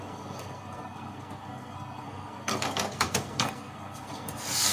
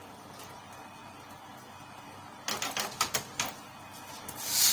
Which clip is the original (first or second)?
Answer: second